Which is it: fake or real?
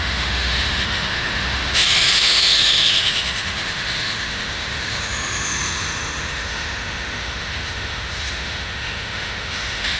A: fake